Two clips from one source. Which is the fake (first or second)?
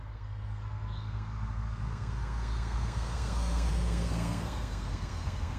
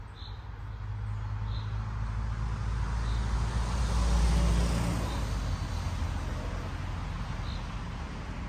first